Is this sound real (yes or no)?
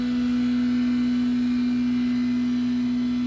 yes